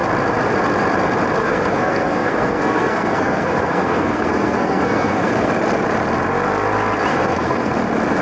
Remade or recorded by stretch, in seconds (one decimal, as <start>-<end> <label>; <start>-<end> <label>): 0.0-1.4 recorded; 1.4-5.5 remade; 5.5-7.1 recorded; 7.1-7.7 remade; 7.7-8.2 recorded